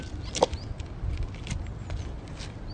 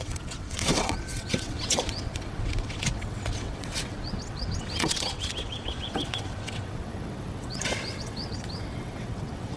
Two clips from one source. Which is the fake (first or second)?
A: second